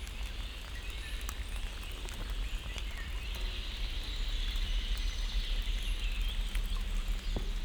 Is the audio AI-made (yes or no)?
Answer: no